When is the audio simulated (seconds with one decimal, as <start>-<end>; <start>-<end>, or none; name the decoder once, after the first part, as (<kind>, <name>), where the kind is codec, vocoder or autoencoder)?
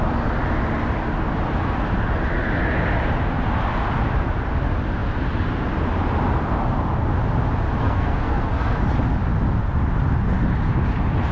7.8-8.8 (codec, SNAC)